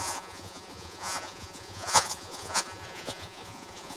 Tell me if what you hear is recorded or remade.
remade